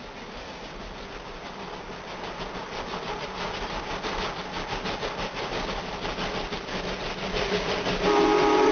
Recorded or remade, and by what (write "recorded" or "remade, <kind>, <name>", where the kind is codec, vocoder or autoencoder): recorded